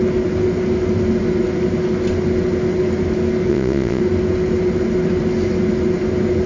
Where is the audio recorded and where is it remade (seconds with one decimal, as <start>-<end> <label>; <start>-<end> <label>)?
0.0-3.5 recorded; 3.5-4.0 remade; 4.0-6.5 recorded